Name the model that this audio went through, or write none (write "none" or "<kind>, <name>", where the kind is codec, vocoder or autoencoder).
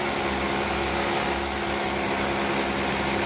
none